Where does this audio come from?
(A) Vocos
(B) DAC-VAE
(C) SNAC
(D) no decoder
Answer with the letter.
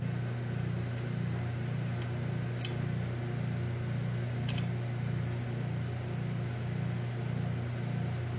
D